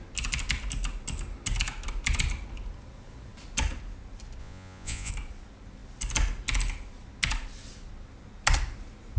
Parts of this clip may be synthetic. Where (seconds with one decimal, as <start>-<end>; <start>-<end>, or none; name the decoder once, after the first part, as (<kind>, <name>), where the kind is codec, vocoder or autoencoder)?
4.4-5.1 (vocoder, Vocos)